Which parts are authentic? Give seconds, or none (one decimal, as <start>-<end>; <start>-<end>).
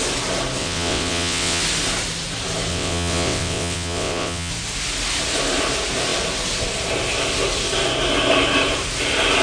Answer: 0.0-0.6; 1.6-2.7; 4.5-9.4